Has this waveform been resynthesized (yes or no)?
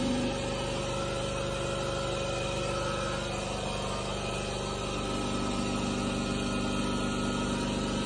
no